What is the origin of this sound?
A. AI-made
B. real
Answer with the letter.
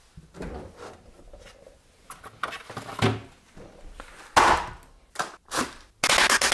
B